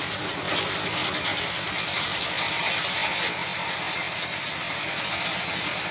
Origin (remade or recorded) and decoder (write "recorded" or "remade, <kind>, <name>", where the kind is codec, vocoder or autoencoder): recorded